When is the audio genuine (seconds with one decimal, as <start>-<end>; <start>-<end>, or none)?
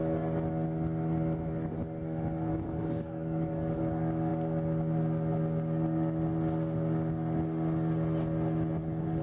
0.0-2.5; 3.8-9.2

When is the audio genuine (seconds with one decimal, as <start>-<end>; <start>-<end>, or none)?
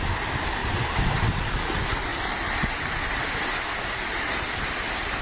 0.0-5.2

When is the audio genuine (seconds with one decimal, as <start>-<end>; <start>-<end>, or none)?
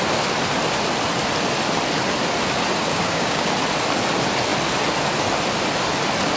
0.0-2.9; 3.5-6.4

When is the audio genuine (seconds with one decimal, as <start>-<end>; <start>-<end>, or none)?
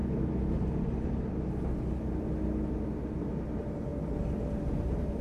0.0-3.1; 3.9-4.8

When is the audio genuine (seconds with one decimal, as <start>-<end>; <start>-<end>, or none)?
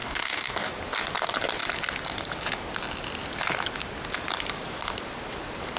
0.7-5.8